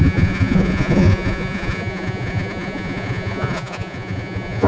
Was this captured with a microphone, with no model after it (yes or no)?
no